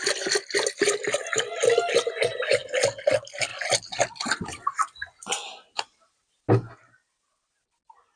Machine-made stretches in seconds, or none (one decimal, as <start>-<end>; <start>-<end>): none